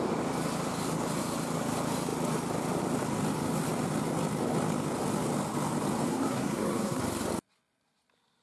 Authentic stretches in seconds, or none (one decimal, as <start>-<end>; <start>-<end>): 0.0-6.1; 7.0-8.4